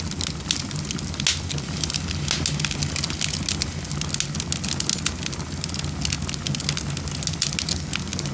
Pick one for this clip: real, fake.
real